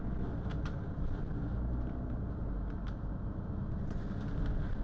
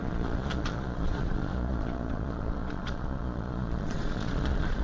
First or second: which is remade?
second